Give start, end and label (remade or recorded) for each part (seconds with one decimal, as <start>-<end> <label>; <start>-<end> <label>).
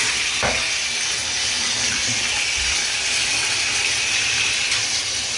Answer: 0.0-5.4 recorded